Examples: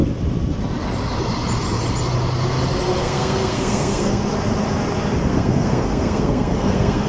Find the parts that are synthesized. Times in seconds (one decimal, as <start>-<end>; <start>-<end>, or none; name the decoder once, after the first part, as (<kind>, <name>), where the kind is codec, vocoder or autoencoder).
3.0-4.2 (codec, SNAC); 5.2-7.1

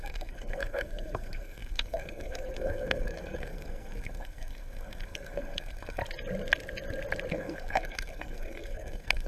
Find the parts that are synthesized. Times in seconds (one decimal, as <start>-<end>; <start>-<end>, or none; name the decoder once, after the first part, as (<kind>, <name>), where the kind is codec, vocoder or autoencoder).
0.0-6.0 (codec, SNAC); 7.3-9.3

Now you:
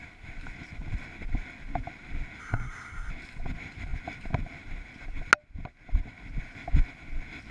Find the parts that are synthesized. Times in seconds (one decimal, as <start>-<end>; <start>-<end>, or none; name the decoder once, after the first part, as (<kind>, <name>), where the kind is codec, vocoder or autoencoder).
2.4-3.1 (codec, SNAC)

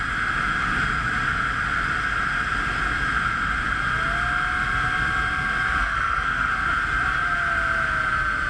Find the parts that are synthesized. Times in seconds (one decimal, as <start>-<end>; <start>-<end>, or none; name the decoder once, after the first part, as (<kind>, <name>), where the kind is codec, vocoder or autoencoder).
5.8-6.5 (codec, SNAC)

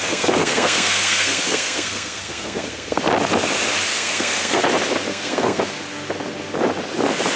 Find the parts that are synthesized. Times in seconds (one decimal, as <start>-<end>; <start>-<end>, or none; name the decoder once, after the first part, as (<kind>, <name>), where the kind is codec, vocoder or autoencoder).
0.0-3.0 (codec, SNAC); 3.9-4.6; 5.1-5.6

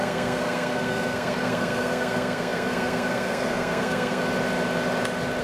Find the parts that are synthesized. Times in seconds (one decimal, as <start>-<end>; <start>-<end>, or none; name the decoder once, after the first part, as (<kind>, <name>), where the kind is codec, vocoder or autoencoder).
0.0-4.2 (codec, SNAC)